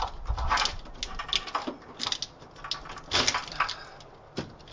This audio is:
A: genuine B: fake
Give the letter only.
A